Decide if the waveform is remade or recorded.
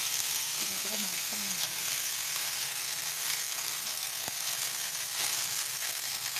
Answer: remade